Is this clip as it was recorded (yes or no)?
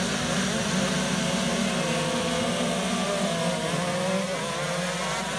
yes